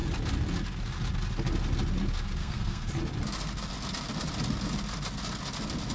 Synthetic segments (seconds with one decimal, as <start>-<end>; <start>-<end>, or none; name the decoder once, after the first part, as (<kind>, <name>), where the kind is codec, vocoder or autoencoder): 2.4-2.9 (codec, SNAC)